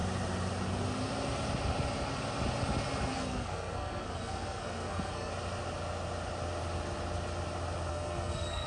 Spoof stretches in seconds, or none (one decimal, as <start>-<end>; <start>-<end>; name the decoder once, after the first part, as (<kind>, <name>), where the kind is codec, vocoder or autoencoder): 3.1-5.3 (codec, SNAC); 7.9-8.7